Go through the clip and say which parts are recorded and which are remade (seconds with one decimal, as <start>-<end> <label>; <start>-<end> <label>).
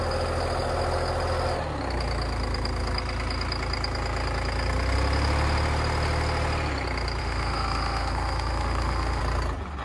0.0-7.2 recorded; 7.2-9.2 remade; 9.2-9.8 recorded